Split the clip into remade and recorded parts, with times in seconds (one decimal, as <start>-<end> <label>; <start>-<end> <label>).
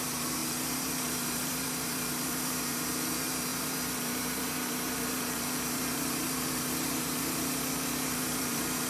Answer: 0.0-8.9 remade